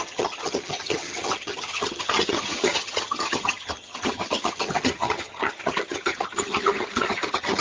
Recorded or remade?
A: remade